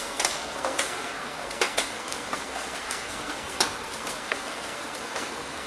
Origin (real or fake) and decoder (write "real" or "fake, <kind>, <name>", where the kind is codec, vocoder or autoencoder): fake, codec, SNAC